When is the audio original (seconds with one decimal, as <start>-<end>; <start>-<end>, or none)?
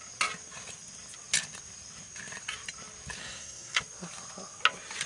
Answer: 0.0-3.2; 3.8-5.1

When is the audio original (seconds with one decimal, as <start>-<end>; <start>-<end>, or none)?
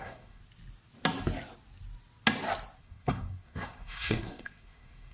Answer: 0.4-2.8